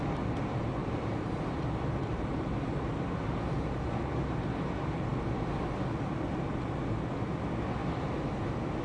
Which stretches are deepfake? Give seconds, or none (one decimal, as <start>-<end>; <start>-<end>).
0.8-4.1; 7.8-8.4